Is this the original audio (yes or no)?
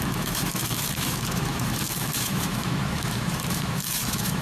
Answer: no